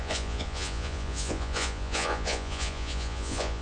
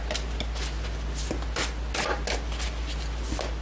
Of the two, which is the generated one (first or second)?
first